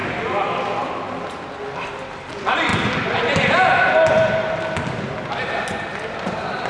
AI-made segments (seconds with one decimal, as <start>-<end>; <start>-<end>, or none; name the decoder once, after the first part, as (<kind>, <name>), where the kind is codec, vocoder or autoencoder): none